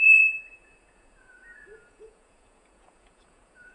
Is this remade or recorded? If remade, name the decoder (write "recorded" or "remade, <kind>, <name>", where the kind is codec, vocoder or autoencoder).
remade, vocoder, Vocos